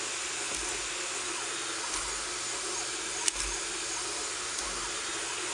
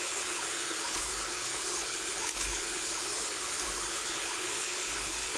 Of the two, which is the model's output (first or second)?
second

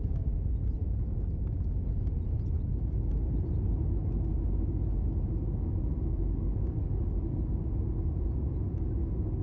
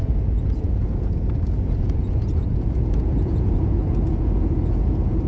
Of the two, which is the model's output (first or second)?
second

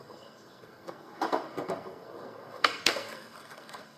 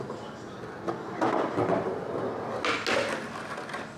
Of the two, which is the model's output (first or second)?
first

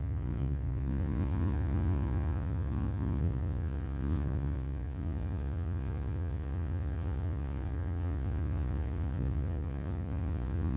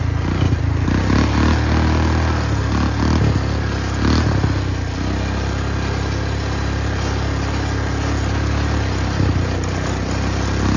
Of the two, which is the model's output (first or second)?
first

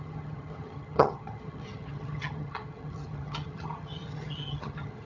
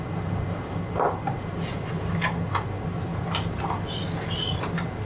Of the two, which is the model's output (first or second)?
first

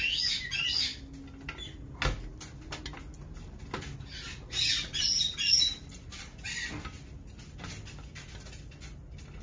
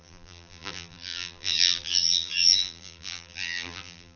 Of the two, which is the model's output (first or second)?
second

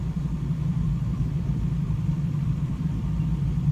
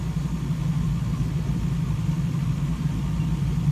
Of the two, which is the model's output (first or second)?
first